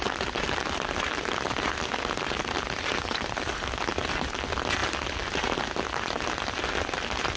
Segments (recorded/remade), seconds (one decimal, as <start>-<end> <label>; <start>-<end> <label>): 0.0-7.4 recorded